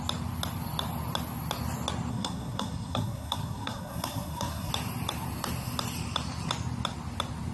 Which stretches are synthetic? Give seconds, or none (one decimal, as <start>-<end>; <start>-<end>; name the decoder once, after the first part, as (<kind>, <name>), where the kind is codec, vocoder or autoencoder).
2.1-4.7 (codec, SNAC)